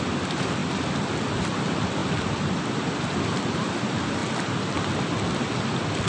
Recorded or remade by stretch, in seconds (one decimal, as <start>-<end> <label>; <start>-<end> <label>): 0.0-6.1 recorded